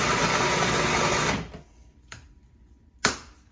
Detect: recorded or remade recorded